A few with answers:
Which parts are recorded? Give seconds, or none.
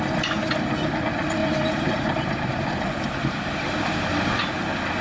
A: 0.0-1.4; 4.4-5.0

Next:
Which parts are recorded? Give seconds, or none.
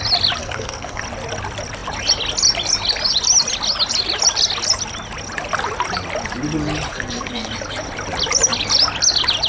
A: 0.0-0.4; 1.0-6.9; 7.5-9.5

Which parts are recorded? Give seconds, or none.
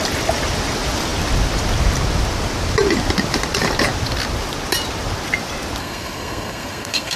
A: 0.0-5.8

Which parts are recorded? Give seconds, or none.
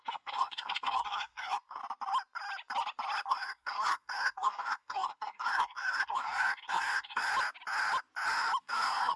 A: 1.8-3.3; 7.3-8.6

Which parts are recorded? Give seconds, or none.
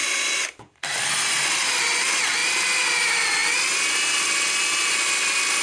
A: 1.8-2.4; 2.9-5.6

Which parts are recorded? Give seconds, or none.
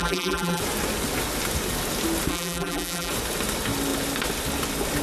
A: 0.6-2.3; 3.1-5.0